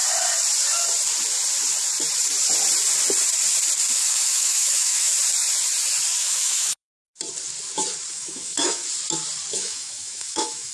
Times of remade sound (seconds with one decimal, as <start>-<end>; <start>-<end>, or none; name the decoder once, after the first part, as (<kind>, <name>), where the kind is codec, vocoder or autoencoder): 3.9-5.1 (autoencoder, DAC-VAE); 6.2-7.1; 8.1-8.8; 9.5-10.7